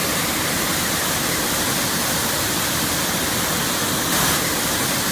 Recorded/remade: recorded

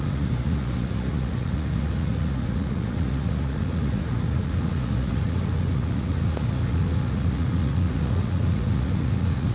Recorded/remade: remade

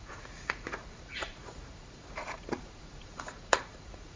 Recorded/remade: remade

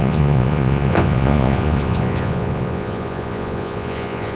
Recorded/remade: remade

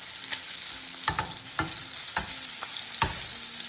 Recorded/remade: recorded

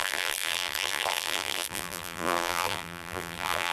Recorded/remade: remade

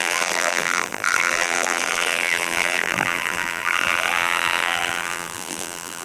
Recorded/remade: remade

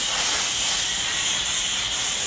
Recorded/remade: recorded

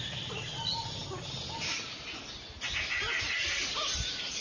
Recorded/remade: recorded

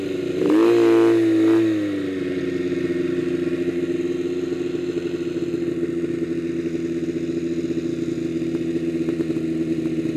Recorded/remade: recorded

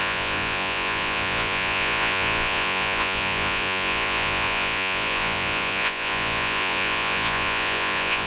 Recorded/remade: remade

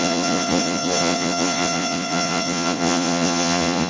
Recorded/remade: remade